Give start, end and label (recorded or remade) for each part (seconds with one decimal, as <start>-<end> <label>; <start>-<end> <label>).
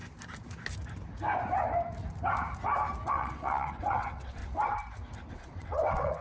0.0-3.1 recorded; 3.1-4.4 remade; 4.4-5.3 recorded; 5.3-6.2 remade